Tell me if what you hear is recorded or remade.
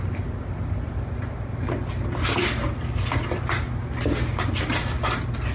recorded